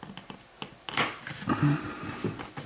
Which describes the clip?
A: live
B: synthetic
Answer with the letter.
A